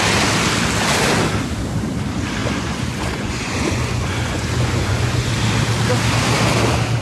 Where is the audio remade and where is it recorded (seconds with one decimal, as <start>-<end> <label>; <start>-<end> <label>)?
0.0-2.4 recorded; 2.4-5.3 remade; 5.3-7.0 recorded

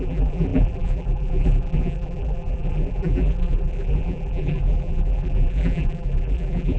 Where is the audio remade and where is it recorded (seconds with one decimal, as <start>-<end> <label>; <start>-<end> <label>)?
0.0-6.8 remade

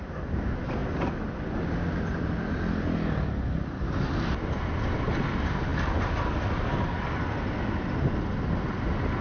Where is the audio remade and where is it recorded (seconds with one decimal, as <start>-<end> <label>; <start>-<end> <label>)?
0.0-9.2 recorded

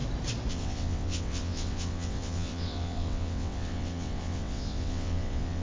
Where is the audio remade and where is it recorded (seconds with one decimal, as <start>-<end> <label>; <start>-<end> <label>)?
0.0-0.5 recorded; 0.5-5.6 remade

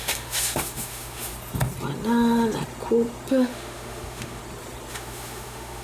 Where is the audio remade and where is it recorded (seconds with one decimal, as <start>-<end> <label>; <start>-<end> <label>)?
0.0-1.3 remade; 1.3-3.3 recorded; 3.3-4.4 remade; 4.4-4.9 recorded; 4.9-5.8 remade